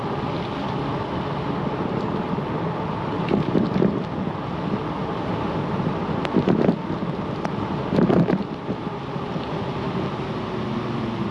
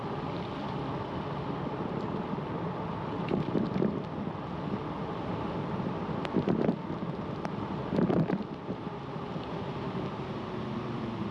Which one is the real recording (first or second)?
first